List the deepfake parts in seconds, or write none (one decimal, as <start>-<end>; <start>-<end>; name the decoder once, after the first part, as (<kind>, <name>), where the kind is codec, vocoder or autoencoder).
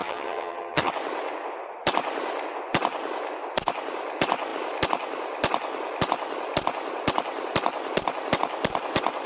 0.0-0.9 (vocoder, HiFi-GAN)